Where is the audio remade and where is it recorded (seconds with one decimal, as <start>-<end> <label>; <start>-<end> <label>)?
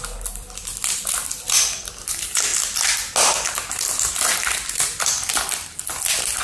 0.0-2.5 remade; 2.5-5.9 recorded; 5.9-6.4 remade